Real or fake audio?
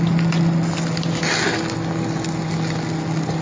real